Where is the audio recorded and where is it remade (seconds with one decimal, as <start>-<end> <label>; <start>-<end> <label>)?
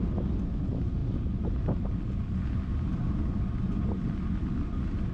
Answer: 0.0-5.1 recorded